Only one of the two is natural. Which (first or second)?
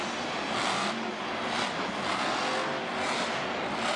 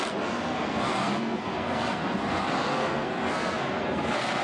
first